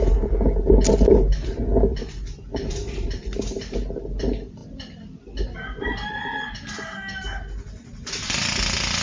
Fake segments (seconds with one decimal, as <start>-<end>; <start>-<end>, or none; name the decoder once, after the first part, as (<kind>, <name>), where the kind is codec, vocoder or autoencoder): none